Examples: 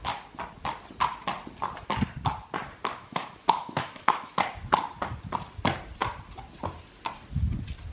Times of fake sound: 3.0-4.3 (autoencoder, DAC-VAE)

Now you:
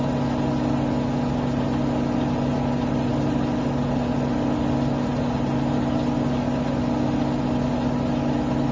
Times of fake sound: none